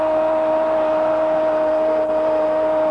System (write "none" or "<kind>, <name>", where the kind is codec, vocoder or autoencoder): none